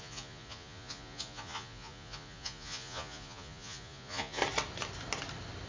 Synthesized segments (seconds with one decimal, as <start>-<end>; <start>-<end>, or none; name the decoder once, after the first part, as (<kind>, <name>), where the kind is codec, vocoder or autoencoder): 0.0-4.4 (vocoder, Vocos)